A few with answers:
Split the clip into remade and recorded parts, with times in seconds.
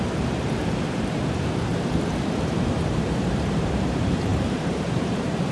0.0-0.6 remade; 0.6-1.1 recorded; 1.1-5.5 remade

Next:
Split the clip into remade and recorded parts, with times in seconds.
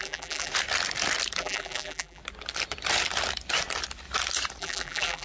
0.0-0.5 remade; 0.5-1.4 recorded; 1.4-2.2 remade; 2.2-4.6 recorded; 4.6-5.2 remade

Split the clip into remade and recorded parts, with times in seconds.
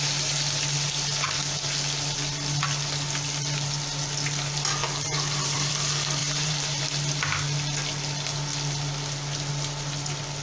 0.0-4.8 recorded; 4.8-5.7 remade; 5.7-6.2 recorded; 6.2-6.8 remade; 6.8-10.4 recorded